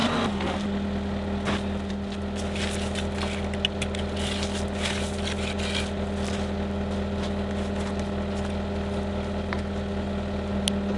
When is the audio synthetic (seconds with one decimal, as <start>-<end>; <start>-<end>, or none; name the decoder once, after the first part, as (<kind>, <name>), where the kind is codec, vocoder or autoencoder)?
none

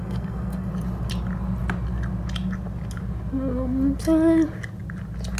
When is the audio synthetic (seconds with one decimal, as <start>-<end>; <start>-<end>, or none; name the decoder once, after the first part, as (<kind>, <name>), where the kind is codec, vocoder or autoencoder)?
0.0-0.7 (codec, SNAC)

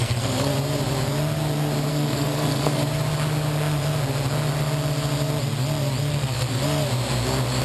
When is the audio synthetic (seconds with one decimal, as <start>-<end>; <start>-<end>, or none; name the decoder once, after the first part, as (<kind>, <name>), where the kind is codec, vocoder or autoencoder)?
0.0-0.5 (codec, SNAC); 1.9-2.8; 6.1-6.5

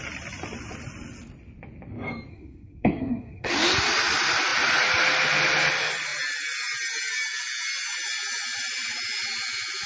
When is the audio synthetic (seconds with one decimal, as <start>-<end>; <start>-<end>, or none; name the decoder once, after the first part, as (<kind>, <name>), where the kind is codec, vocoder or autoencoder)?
2.3-3.5 (codec, SNAC)

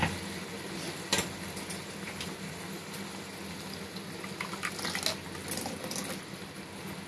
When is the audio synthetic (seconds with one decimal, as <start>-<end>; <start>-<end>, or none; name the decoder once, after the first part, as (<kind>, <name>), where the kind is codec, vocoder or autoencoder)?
none